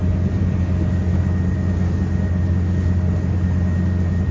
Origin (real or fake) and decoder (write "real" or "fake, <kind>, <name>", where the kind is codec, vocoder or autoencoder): real